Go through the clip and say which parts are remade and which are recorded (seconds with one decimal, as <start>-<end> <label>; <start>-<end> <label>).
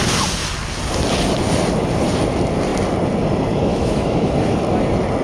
0.0-3.7 recorded; 3.7-4.3 remade; 4.3-5.2 recorded